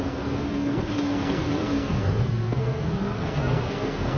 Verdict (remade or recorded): remade